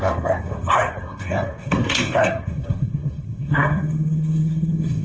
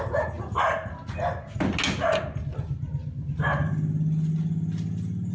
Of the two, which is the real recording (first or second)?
second